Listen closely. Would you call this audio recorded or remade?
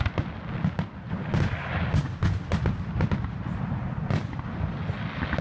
recorded